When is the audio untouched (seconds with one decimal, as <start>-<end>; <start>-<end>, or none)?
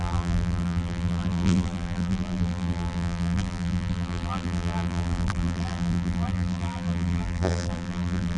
none